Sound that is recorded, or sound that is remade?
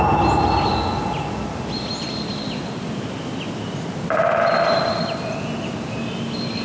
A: recorded